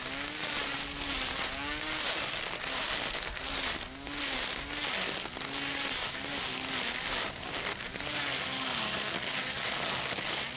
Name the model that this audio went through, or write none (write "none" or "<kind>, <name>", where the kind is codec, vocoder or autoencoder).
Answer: none